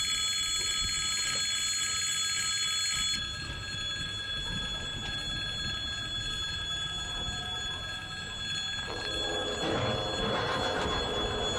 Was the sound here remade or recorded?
recorded